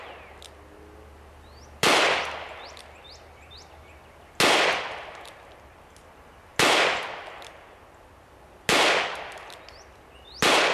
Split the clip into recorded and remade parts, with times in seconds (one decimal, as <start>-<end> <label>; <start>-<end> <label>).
0.0-10.7 recorded

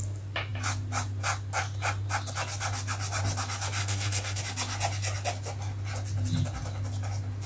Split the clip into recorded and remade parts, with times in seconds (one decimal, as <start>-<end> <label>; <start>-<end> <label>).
0.0-3.8 recorded; 3.8-4.4 remade; 4.4-7.5 recorded

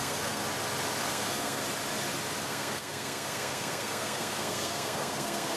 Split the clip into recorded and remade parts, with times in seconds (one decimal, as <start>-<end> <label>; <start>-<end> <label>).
0.0-0.4 remade; 0.4-1.1 recorded; 1.1-1.6 remade; 1.6-2.4 recorded; 2.4-5.6 remade

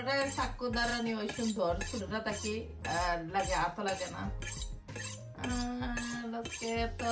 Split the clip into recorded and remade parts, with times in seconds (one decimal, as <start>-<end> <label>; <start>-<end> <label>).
0.0-7.1 recorded

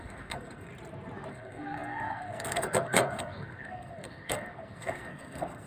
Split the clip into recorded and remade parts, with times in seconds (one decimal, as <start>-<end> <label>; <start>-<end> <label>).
0.0-0.7 remade; 0.7-1.3 recorded; 1.3-5.7 remade

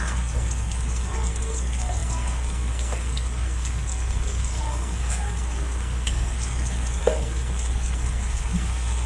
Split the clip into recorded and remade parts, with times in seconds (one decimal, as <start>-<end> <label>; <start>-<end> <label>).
0.0-9.1 remade

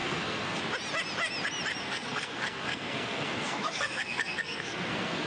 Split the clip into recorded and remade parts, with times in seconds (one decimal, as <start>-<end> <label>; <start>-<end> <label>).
0.0-0.6 remade; 0.6-1.8 recorded; 1.8-5.3 remade

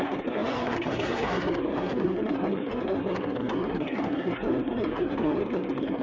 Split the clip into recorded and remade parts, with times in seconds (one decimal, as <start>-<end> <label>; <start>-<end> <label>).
0.0-6.0 remade